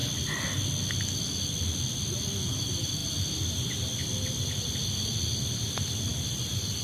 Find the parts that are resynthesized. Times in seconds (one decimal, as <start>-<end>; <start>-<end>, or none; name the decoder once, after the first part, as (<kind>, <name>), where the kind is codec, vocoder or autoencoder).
none